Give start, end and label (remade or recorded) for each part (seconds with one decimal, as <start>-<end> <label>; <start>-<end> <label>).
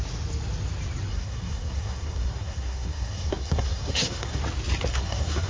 0.0-1.1 recorded; 1.1-4.4 remade; 4.4-4.9 recorded; 4.9-5.5 remade